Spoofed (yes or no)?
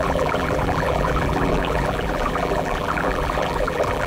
yes